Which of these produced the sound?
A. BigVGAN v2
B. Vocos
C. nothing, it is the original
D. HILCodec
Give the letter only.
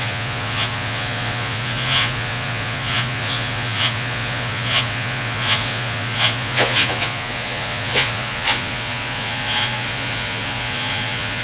B